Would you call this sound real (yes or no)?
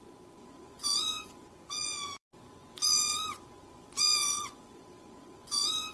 no